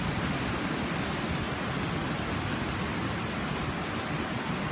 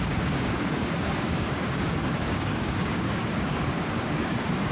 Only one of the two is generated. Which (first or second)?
second